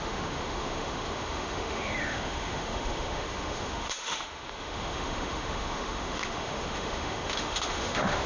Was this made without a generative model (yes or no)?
no